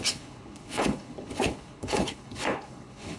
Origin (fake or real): fake